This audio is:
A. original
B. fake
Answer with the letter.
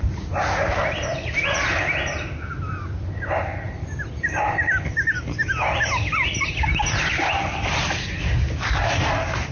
A